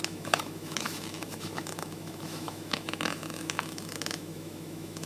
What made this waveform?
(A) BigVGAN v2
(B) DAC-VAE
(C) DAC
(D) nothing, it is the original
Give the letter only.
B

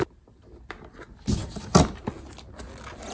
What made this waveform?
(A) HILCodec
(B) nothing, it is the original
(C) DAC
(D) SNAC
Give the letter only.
B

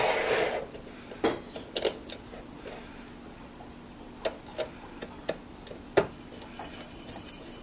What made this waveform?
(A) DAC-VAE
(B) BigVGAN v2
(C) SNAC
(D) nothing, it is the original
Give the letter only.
D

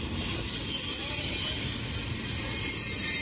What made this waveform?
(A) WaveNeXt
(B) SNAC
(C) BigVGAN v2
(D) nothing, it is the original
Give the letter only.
D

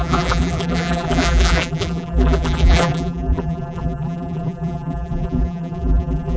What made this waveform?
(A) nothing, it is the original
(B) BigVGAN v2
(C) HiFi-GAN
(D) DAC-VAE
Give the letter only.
B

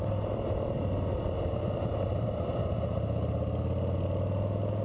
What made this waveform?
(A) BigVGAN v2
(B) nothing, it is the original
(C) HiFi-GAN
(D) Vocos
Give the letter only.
B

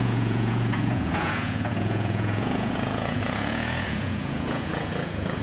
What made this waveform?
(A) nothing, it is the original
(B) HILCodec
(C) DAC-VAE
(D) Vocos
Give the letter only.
D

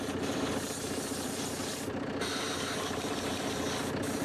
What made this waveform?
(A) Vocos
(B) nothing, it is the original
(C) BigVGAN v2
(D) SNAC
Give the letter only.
C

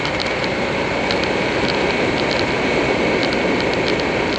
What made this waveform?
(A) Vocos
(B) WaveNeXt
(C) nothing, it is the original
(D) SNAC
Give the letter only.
C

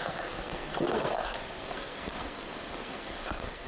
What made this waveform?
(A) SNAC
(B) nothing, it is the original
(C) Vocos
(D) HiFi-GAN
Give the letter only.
A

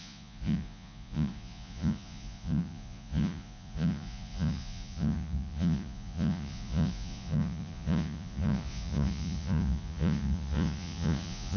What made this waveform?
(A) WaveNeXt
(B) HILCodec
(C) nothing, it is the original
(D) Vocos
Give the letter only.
D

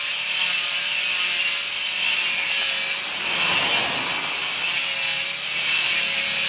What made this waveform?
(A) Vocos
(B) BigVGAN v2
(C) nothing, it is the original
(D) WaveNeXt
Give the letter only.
C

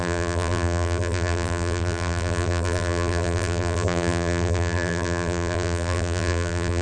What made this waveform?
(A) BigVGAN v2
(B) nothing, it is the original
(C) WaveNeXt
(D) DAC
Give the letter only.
A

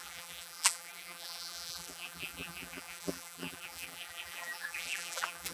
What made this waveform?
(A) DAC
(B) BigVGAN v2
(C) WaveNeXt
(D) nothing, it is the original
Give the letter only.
B